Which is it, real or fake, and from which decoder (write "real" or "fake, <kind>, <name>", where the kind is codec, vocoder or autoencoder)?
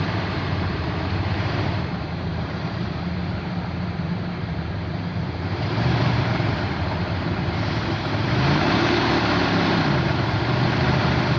fake, vocoder, BigVGAN v2